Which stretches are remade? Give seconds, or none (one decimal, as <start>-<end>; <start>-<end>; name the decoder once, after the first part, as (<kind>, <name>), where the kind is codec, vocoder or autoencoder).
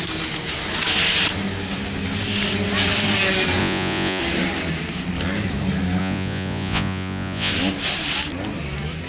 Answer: 3.6-4.2 (vocoder, Vocos); 6.0-7.5